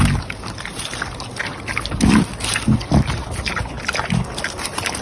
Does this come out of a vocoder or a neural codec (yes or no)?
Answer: no